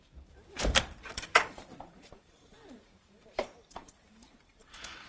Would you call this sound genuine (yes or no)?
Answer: no